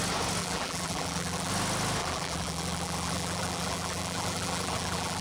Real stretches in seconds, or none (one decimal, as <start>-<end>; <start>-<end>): 0.0-0.4; 1.5-2.0